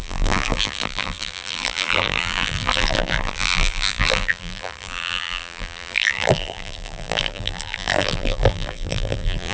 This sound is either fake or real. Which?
fake